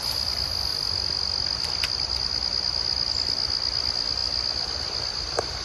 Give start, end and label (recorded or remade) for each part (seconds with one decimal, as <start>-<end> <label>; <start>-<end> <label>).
0.0-5.6 recorded